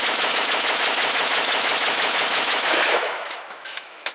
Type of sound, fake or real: fake